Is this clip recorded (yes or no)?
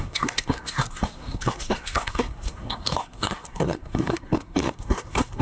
no